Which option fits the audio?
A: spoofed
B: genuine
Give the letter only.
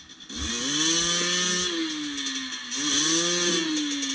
B